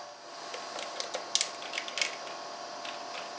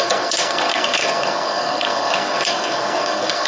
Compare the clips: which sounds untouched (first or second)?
first